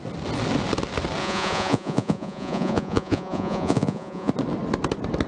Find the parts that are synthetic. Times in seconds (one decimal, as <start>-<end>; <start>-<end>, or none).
1.2-4.3